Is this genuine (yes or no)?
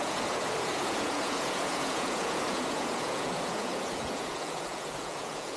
no